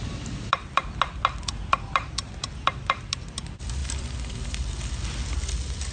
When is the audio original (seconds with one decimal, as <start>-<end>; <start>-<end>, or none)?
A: 0.0-3.8